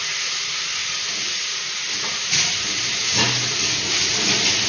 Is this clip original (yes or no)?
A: yes